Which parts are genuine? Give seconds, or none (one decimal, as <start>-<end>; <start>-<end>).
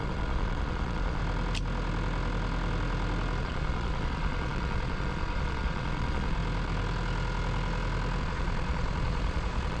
1.2-3.4; 6.4-8.2